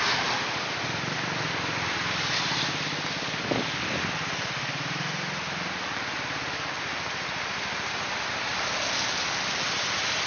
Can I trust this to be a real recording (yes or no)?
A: yes